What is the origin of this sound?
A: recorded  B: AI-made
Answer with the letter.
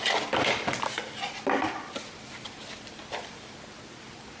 A